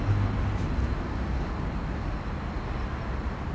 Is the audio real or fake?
real